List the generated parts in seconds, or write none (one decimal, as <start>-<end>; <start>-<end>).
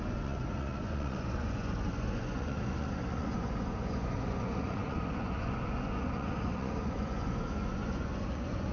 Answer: 0.0-8.7